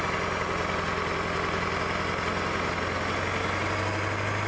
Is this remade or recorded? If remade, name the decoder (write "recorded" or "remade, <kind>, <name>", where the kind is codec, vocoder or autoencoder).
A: recorded